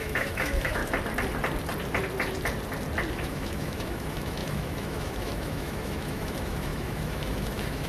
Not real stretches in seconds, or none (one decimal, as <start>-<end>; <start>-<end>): 0.0-0.8; 3.1-7.9